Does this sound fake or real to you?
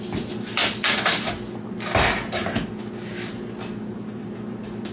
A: real